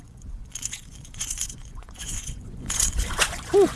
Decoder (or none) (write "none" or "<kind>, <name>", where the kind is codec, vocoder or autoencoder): vocoder, Vocos